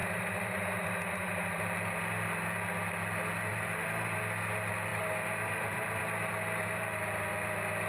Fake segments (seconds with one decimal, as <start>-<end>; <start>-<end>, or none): 0.0-1.6; 3.5-4.2; 4.9-6.0